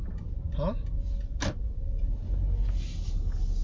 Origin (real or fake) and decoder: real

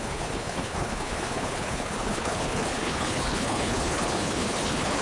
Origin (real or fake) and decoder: fake, codec, HILCodec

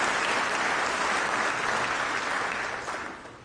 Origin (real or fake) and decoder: fake, vocoder, BigVGAN v2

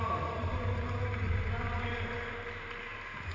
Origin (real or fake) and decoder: real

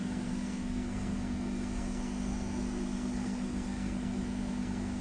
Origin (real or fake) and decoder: fake, codec, SNAC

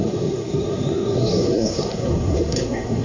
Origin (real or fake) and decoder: fake, codec, SNAC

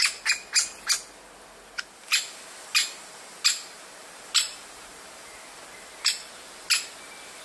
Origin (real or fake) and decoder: real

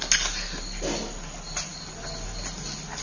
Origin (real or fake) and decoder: real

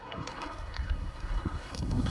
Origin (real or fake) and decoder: fake, codec, SNAC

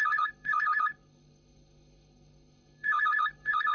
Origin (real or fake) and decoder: fake, codec, HILCodec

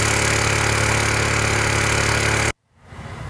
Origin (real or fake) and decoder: real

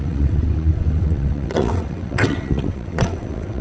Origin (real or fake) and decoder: fake, vocoder, WaveNeXt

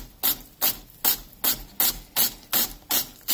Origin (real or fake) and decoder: real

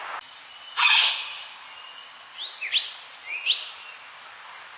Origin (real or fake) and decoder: real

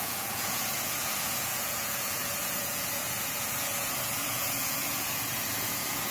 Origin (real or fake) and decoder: fake, vocoder, Vocos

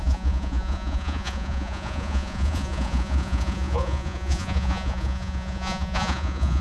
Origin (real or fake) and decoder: fake, vocoder, Vocos